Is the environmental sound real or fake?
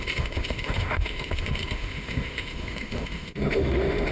fake